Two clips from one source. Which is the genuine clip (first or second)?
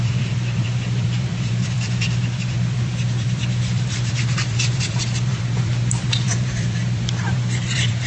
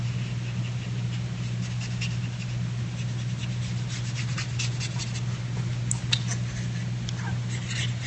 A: second